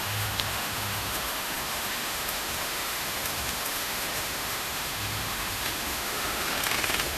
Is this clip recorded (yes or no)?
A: no